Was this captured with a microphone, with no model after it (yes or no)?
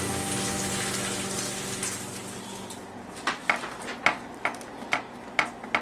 yes